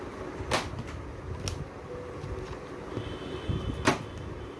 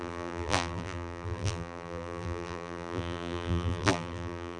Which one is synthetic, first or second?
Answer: second